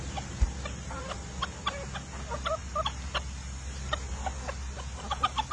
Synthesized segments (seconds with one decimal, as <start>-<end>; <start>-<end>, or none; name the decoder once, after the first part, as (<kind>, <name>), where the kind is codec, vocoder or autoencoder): none

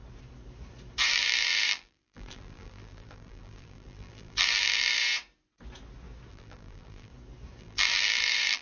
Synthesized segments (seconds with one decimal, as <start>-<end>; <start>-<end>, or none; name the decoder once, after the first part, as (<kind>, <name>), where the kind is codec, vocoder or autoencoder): 1.1-5.0 (vocoder, BigVGAN v2); 6.3-7.1; 7.6-8.6